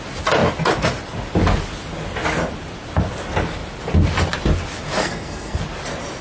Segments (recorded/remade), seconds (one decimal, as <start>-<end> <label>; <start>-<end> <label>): 0.0-5.0 recorded; 5.0-5.6 remade; 5.6-6.2 recorded